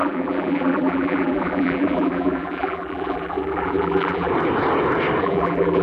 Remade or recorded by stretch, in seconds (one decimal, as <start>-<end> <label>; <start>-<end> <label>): 0.0-4.3 remade; 4.3-5.2 recorded; 5.2-5.8 remade